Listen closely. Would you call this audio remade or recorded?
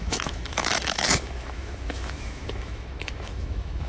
remade